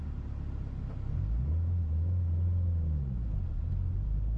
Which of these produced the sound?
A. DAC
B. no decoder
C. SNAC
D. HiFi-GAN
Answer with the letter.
B